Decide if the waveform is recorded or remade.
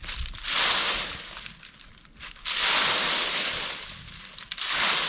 recorded